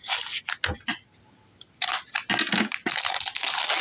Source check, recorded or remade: recorded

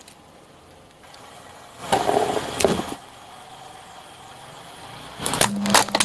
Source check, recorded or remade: recorded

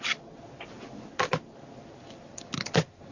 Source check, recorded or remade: recorded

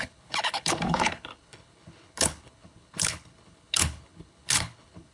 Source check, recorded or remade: remade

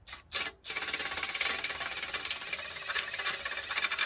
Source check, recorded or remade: recorded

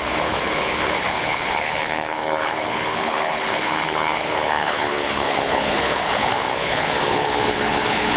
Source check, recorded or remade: remade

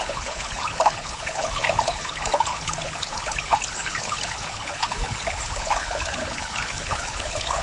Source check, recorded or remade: remade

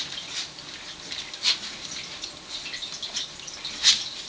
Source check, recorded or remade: recorded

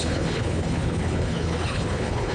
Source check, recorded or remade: remade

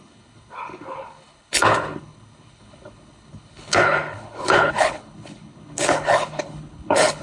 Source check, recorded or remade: remade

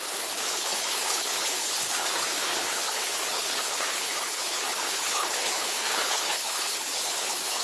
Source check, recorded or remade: remade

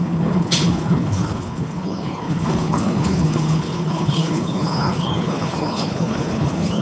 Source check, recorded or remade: remade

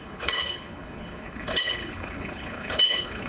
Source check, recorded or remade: remade